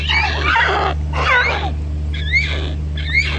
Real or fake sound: real